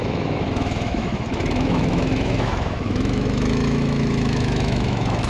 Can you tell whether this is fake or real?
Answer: fake